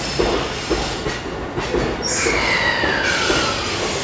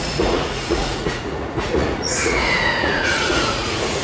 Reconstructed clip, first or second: second